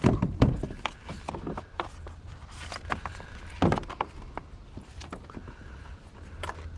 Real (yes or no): yes